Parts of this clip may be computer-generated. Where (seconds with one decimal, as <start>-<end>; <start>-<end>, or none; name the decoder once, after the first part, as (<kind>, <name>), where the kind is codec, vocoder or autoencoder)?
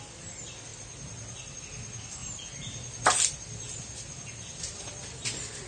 0.7-1.6 (vocoder, BigVGAN v2); 2.2-5.7